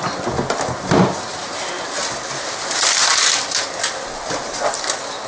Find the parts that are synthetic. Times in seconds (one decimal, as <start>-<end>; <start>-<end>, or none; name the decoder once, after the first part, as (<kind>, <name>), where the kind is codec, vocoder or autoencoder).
none